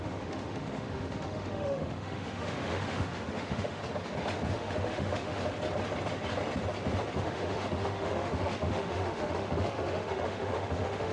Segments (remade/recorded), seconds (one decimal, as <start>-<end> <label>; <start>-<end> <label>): 0.0-3.8 remade; 3.8-4.5 recorded; 4.5-5.4 remade; 5.4-7.2 recorded; 7.2-11.1 remade